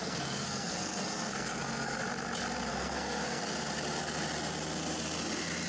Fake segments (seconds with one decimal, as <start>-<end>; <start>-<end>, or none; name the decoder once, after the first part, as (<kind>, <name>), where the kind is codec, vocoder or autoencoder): 0.0-2.0 (codec, SNAC); 2.7-3.4